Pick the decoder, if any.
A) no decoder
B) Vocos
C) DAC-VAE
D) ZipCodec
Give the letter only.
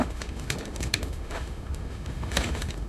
C